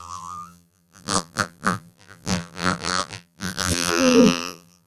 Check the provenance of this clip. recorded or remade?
remade